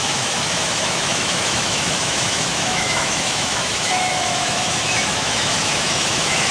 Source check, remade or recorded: remade